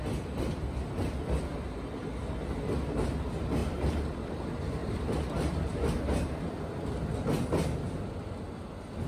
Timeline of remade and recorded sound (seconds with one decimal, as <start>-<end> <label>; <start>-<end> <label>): 0.0-3.6 recorded; 3.6-4.3 remade; 4.3-4.8 recorded; 4.8-5.7 remade; 5.7-9.1 recorded